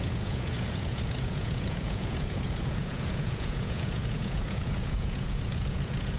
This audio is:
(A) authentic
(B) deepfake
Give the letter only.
B